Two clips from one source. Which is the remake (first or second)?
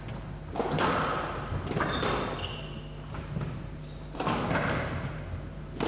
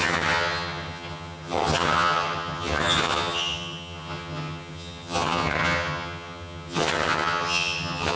second